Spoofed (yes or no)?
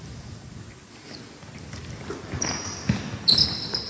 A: no